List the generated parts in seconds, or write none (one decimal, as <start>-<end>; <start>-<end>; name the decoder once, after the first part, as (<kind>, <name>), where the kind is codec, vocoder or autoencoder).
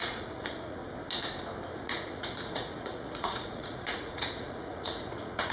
0.0-0.8 (vocoder, Vocos); 1.7-5.5